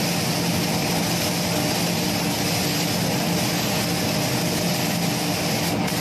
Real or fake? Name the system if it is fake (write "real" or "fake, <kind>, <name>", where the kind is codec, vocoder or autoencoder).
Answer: real